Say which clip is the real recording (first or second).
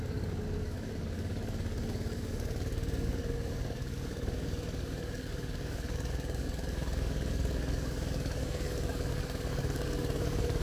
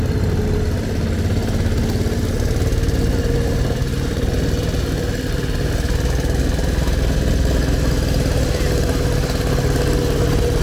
second